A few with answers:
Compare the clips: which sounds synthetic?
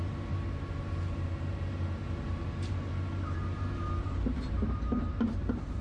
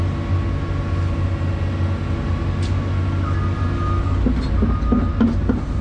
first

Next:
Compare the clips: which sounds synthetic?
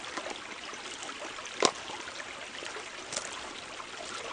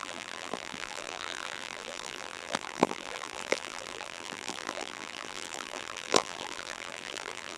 second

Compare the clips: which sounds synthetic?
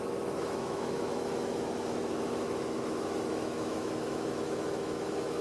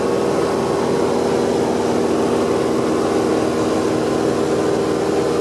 first